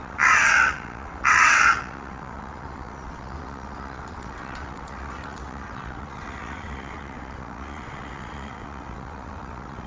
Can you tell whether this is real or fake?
fake